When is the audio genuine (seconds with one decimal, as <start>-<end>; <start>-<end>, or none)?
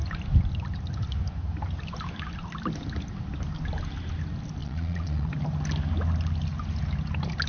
0.0-4.6; 5.3-7.5